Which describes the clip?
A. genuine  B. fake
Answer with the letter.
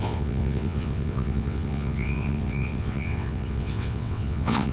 B